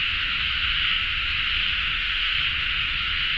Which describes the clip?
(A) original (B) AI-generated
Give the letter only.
B